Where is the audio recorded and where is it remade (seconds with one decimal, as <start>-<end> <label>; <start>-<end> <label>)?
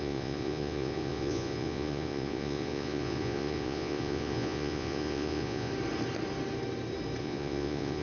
0.0-5.7 remade; 5.7-7.2 recorded; 7.2-8.0 remade